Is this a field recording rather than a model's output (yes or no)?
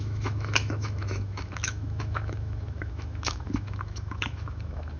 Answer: no